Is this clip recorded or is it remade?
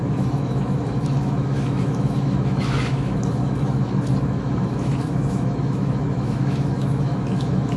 remade